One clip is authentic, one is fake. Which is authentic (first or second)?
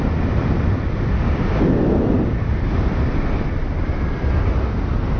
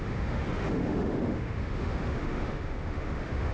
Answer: first